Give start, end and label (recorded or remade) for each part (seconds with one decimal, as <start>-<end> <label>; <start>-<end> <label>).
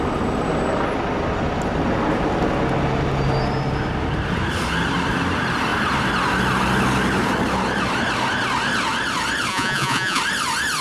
0.0-9.5 recorded; 9.5-10.2 remade; 10.2-10.8 recorded